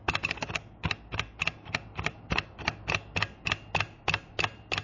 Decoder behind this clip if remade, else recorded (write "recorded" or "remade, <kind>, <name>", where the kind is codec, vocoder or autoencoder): recorded